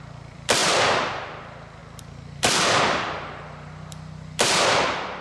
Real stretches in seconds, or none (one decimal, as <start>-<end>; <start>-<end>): 0.6-1.2